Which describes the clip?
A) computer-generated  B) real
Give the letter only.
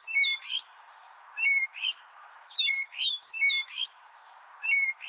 A